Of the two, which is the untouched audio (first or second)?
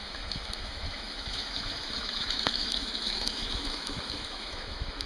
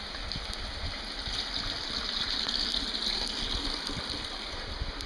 second